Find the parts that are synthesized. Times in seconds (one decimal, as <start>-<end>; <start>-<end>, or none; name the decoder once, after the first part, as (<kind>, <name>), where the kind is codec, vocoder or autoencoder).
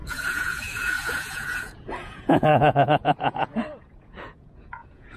0.0-5.2 (vocoder, Vocos)